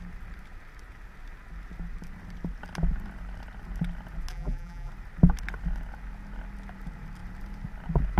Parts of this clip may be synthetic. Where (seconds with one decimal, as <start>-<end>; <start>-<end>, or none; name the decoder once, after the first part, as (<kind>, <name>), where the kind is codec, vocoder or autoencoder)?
4.3-4.9 (vocoder, BigVGAN v2)